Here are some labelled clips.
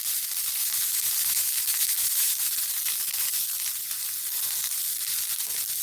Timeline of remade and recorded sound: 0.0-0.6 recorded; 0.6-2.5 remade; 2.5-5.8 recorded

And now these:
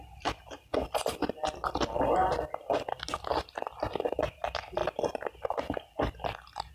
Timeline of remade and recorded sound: 0.0-6.7 recorded

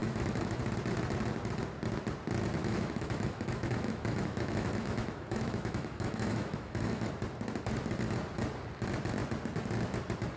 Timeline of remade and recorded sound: 0.0-0.6 remade; 0.6-2.6 recorded; 2.6-7.1 remade; 7.1-10.4 recorded

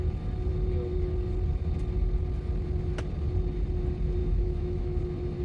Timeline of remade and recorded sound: 0.0-4.2 recorded; 4.2-5.0 remade; 5.0-5.4 recorded

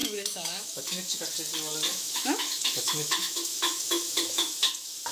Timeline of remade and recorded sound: 0.0-1.2 remade; 1.2-1.9 recorded; 1.9-5.1 remade

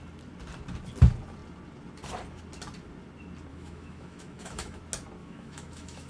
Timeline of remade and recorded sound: 0.0-3.5 recorded; 3.5-4.8 remade; 4.8-5.2 recorded; 5.2-6.1 remade